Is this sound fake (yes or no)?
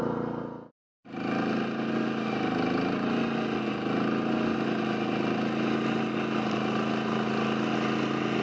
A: no